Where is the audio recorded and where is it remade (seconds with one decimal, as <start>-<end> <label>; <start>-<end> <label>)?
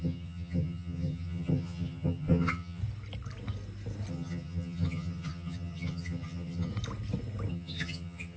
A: 0.0-2.8 remade; 2.8-4.1 recorded; 4.1-6.7 remade; 6.7-7.5 recorded; 7.5-8.4 remade